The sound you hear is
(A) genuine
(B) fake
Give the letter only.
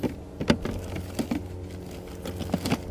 A